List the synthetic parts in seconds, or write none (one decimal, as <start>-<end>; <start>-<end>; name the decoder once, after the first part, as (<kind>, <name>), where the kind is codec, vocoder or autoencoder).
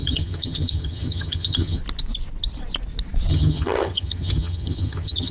0.0-1.8 (vocoder, HiFi-GAN); 3.3-5.3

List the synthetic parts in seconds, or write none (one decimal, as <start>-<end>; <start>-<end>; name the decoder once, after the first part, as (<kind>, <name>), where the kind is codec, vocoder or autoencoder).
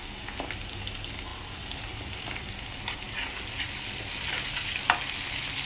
none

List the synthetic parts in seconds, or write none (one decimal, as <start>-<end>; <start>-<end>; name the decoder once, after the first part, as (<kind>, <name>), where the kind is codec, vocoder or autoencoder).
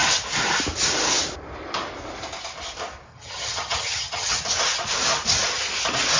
3.1-4.4 (vocoder, HiFi-GAN)